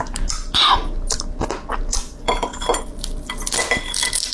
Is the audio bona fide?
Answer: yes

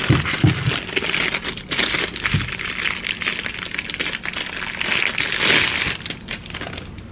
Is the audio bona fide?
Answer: yes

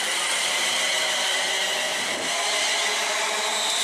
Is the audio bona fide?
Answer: yes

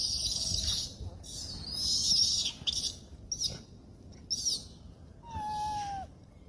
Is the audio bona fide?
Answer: yes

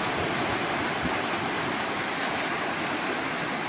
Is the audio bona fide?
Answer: yes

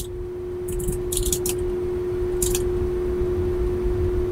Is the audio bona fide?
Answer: yes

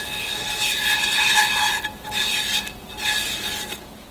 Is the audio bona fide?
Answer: yes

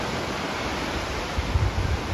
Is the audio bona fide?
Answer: yes